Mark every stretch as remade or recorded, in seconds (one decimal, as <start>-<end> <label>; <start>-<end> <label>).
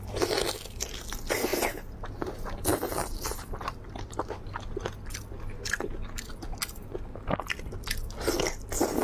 0.0-2.7 recorded; 2.7-4.4 remade; 4.4-9.0 recorded